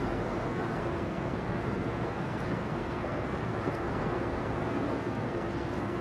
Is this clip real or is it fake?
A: fake